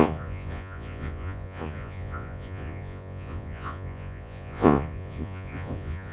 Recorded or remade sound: remade